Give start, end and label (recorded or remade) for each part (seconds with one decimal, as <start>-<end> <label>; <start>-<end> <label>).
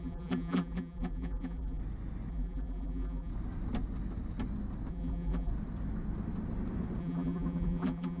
0.0-1.8 remade; 1.8-2.3 recorded; 2.3-3.3 remade; 3.3-4.9 recorded; 4.9-5.5 remade; 5.5-7.0 recorded; 7.0-8.2 remade